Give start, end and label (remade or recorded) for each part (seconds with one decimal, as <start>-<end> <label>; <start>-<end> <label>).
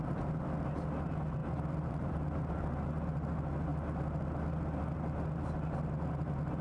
0.0-1.4 recorded; 1.4-2.4 remade; 2.4-6.6 recorded